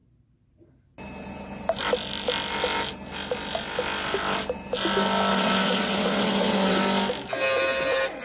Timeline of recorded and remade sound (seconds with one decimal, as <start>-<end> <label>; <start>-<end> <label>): 0.0-5.3 recorded; 5.3-6.8 remade; 6.8-8.2 recorded